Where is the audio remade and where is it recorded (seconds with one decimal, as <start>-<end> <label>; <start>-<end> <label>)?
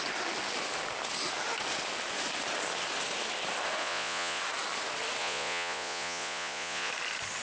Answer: 0.0-3.8 recorded; 3.8-4.4 remade; 4.4-5.2 recorded; 5.2-6.9 remade; 6.9-7.4 recorded